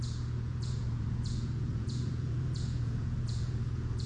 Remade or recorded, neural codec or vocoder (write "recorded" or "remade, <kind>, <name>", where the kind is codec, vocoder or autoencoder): remade, vocoder, Vocos